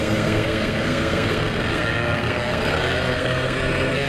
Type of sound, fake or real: fake